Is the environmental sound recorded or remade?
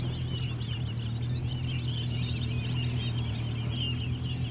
recorded